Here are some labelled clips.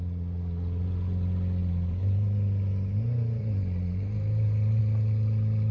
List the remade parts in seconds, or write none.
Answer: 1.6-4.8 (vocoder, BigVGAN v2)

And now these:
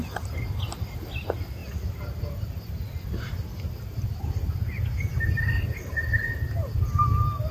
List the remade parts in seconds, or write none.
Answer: 1.6-2.7 (vocoder, BigVGAN v2)

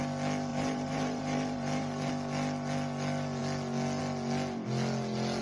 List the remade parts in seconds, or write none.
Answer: 0.5-2.1 (vocoder, BigVGAN v2)

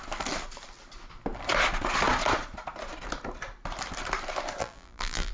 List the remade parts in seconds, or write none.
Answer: 4.6-5.3 (vocoder, BigVGAN v2)

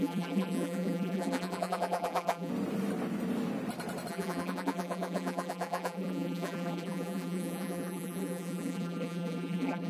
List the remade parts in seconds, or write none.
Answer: 0.0-2.5 (vocoder, BigVGAN v2); 4.1-9.9